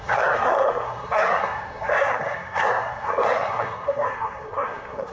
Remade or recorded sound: remade